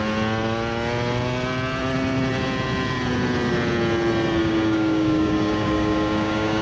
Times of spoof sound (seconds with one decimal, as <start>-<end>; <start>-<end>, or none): 4.4-6.6